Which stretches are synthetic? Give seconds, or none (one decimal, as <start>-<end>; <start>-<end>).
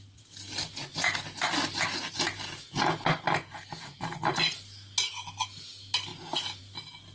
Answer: none